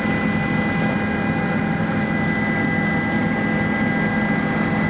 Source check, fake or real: real